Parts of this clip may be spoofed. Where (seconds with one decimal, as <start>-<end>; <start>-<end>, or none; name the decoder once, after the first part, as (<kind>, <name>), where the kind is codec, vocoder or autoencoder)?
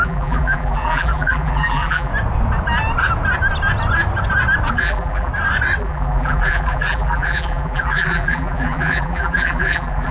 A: 0.0-2.1 (vocoder, BigVGAN v2); 4.7-5.3; 5.8-10.1